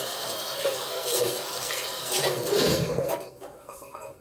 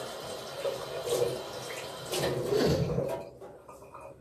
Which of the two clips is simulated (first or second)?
first